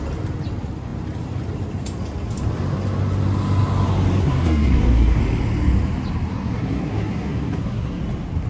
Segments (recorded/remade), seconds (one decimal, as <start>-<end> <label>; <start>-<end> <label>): 0.0-4.2 recorded; 4.2-5.2 remade; 5.2-6.3 recorded; 6.3-8.0 remade; 8.0-8.5 recorded